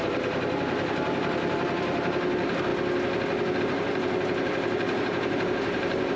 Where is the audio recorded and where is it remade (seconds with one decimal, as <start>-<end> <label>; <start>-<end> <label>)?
0.0-2.7 remade; 2.7-3.6 recorded; 3.6-6.2 remade